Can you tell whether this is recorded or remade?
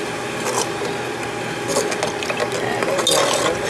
recorded